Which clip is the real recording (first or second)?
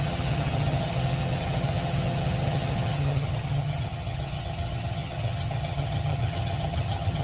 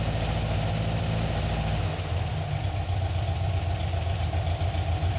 second